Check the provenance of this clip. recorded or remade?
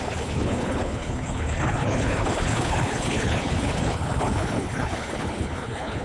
remade